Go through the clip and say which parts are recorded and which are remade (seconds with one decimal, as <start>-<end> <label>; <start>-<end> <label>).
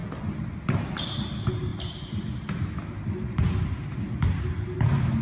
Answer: 0.0-5.2 recorded